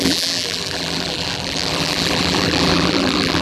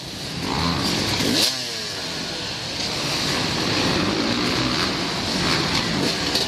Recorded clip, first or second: second